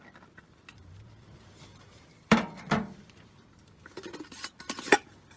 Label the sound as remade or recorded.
remade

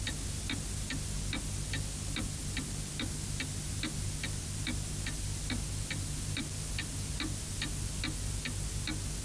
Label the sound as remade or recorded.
recorded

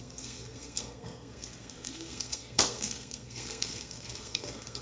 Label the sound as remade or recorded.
remade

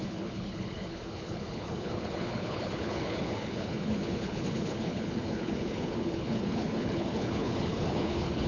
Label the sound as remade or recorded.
remade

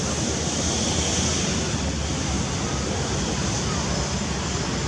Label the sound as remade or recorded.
recorded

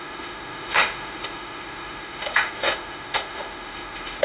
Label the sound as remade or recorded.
remade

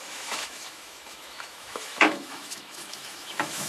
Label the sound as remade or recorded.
remade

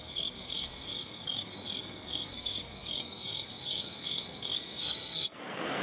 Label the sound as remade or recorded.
remade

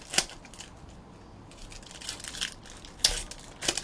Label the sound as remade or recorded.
recorded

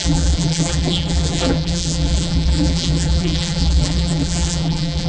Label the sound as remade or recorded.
remade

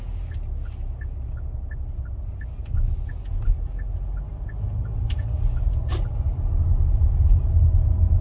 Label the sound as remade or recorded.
recorded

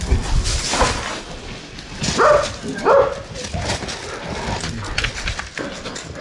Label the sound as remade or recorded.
recorded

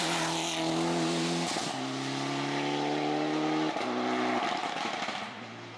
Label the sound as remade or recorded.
recorded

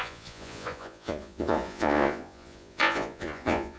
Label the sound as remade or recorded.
remade